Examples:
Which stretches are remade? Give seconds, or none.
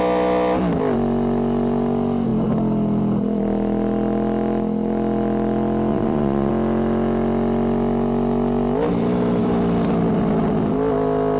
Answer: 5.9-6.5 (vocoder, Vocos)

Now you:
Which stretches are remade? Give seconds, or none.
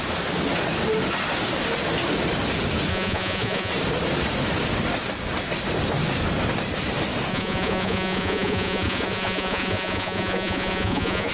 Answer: 2.9-3.7 (vocoder, Vocos); 7.3-11.3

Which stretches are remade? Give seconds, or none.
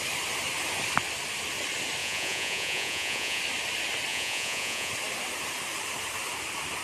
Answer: 2.0-3.4 (vocoder, Vocos); 4.1-4.9